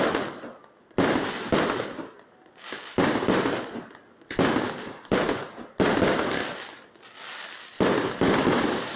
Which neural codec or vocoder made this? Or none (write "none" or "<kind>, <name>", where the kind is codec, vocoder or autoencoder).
none